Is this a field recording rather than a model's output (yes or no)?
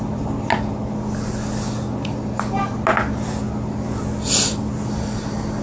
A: yes